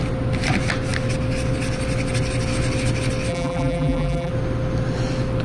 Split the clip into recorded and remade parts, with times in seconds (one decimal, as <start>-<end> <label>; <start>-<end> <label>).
0.0-3.3 recorded; 3.3-4.3 remade; 4.3-5.4 recorded